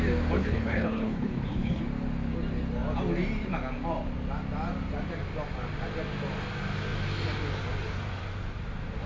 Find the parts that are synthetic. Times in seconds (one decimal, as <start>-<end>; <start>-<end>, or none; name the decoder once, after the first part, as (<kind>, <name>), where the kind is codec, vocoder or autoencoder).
0.4-1.8 (codec, HILCodec)